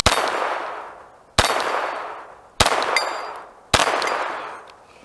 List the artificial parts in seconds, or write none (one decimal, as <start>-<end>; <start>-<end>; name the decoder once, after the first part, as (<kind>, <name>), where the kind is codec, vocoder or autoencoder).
none